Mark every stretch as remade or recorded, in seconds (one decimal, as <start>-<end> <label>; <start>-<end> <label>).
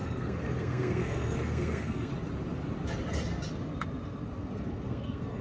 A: 0.0-2.1 remade; 2.1-4.4 recorded; 4.4-5.4 remade